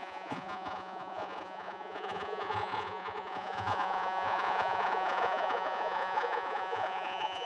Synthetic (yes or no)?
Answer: yes